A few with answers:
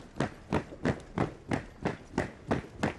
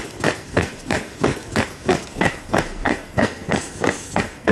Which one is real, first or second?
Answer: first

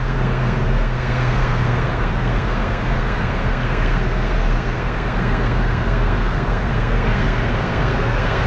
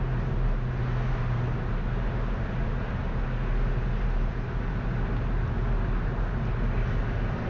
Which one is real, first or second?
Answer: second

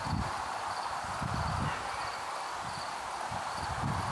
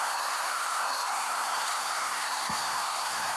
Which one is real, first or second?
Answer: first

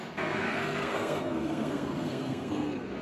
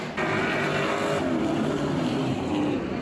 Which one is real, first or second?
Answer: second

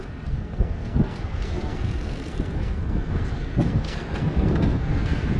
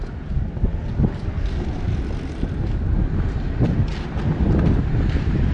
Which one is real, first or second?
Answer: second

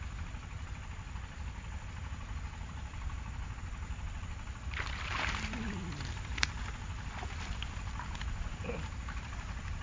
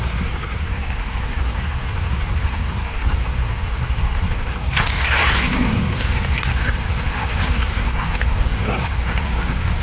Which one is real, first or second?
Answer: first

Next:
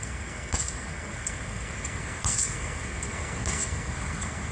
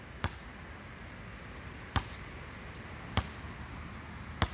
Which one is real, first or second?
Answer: second